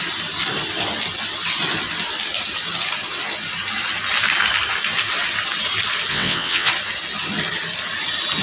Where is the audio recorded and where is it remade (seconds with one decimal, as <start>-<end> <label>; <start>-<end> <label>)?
0.0-6.1 recorded; 6.1-6.7 remade; 6.7-8.4 recorded